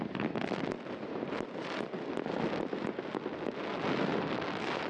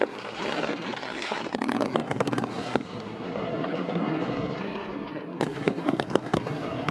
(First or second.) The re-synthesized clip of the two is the second